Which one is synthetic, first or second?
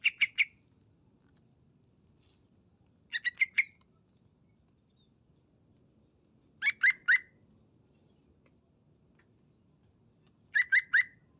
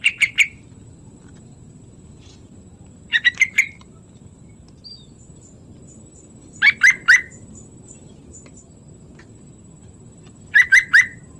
second